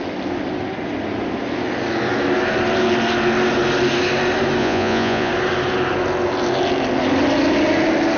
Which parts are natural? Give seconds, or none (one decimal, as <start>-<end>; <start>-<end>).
0.0-4.6; 5.3-8.2